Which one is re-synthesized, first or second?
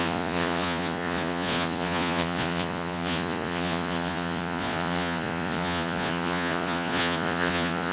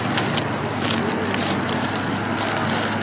first